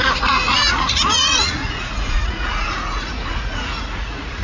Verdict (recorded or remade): remade